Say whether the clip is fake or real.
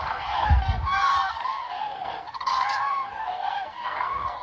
fake